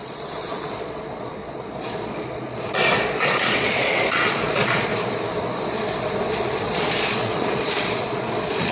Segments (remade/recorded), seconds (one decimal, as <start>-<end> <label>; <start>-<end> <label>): 0.0-4.9 remade; 4.9-5.6 recorded; 5.6-8.7 remade